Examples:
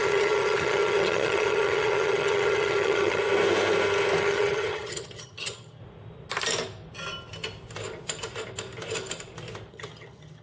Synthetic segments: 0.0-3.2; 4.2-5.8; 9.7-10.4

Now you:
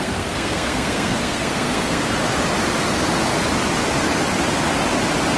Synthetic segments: 0.0-2.0

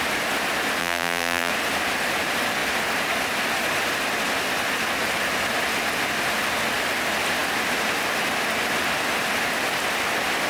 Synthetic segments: 0.8-1.5

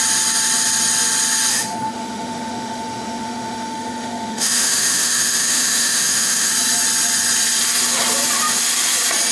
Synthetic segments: 1.5-6.5

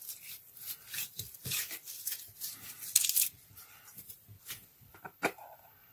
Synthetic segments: 1.4-4.9

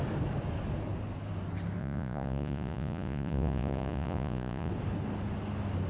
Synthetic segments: 1.8-4.7

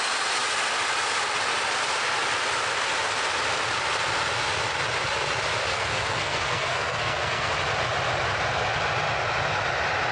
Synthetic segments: 5.7-7.5

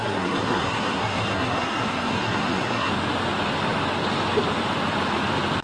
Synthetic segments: 0.0-2.9